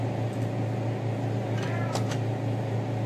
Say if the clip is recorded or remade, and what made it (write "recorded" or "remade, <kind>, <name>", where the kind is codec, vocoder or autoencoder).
recorded